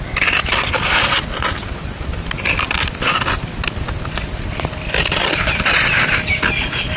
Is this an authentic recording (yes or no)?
yes